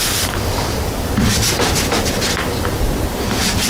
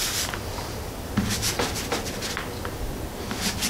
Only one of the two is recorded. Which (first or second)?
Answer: second